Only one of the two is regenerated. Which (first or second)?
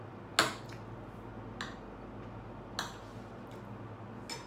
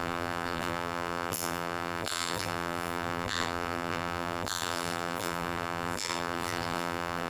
second